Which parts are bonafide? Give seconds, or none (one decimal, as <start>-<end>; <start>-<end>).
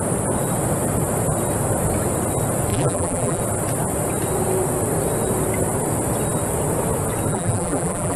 0.0-2.7; 3.4-7.3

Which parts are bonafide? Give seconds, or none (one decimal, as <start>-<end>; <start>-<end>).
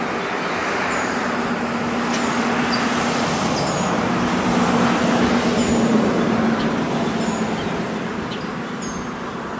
0.0-0.6; 1.2-5.9; 6.4-9.6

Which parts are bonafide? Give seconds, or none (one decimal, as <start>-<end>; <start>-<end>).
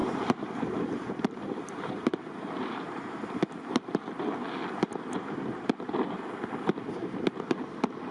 3.4-8.1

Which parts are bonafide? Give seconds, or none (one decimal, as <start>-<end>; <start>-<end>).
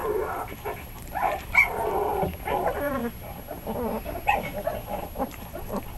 2.1-2.6; 3.0-5.5